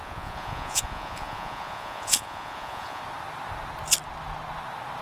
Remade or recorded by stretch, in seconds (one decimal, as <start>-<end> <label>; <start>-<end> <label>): 0.0-3.0 remade; 3.0-5.0 recorded